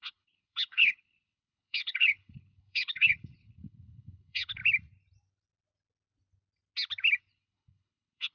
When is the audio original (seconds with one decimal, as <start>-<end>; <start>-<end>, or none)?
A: 4.6-7.2